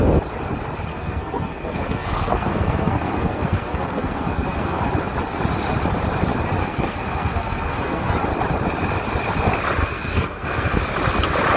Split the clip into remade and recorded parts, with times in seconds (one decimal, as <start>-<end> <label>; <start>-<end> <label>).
0.0-0.9 recorded; 0.9-4.9 remade; 4.9-6.6 recorded; 6.6-8.1 remade; 8.1-9.8 recorded; 9.8-10.8 remade; 10.8-11.6 recorded